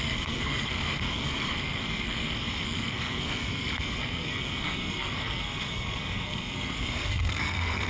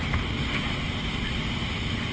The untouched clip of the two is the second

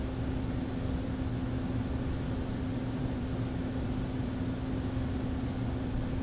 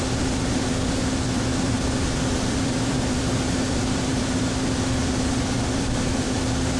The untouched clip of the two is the first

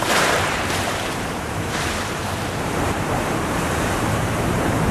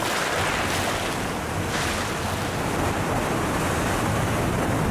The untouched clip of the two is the second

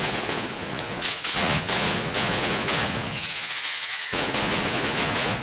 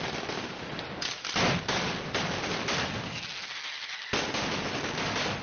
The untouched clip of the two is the second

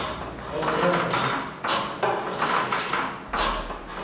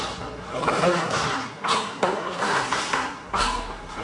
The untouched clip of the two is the first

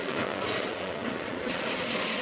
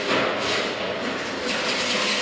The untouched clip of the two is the second